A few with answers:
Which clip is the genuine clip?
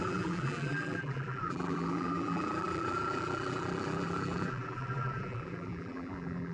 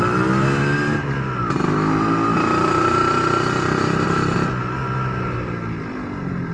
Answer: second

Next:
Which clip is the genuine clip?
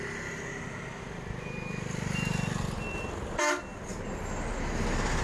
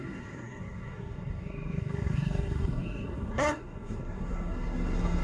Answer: first